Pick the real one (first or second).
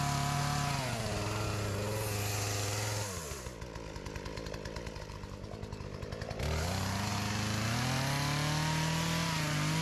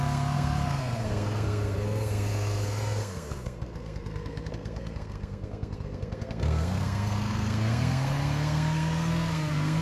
first